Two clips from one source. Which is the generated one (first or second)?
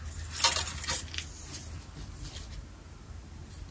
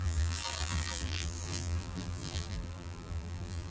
second